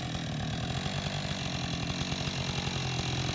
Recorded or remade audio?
recorded